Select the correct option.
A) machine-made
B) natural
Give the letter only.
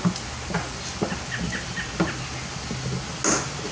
B